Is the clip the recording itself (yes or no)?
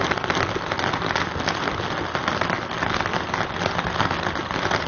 yes